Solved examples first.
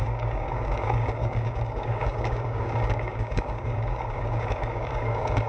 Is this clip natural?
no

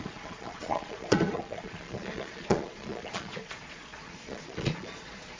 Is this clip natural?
no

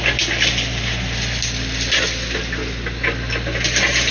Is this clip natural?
yes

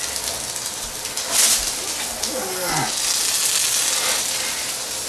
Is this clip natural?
yes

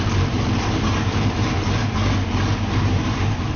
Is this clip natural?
no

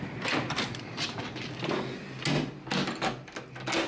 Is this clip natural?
yes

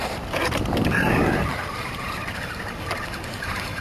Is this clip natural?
yes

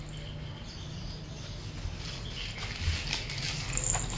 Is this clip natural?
yes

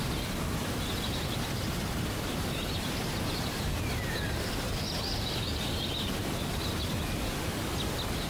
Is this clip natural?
yes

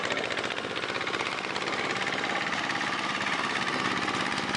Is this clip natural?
yes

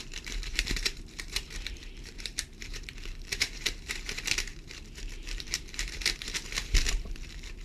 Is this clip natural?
no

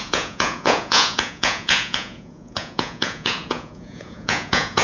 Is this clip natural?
no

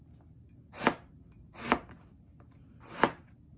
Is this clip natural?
yes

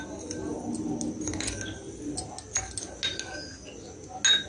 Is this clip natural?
yes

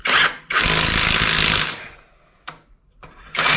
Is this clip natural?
yes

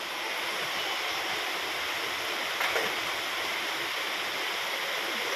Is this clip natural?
no